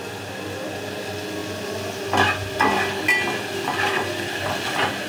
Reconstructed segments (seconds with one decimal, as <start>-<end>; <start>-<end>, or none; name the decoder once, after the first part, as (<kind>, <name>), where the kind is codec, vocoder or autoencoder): none